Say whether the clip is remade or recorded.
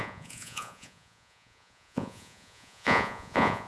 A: remade